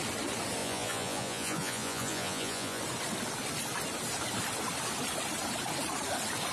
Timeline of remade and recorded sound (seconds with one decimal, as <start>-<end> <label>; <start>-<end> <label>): 0.0-0.6 recorded; 0.6-2.8 remade; 2.8-6.5 recorded